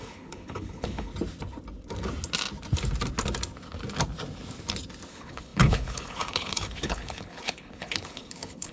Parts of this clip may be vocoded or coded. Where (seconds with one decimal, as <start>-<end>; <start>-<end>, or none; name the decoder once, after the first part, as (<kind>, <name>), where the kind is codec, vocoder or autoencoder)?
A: 0.0-1.1 (codec, HILCodec); 5.1-8.7